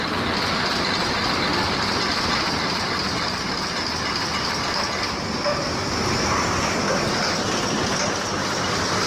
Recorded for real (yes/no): yes